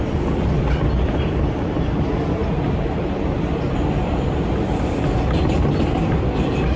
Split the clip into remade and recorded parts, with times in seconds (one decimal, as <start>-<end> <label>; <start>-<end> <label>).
0.0-6.8 recorded